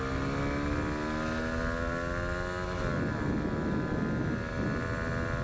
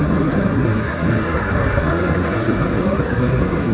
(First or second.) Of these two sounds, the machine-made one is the second